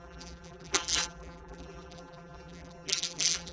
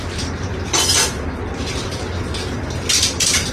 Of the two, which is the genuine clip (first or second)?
second